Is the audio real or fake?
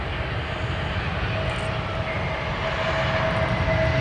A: real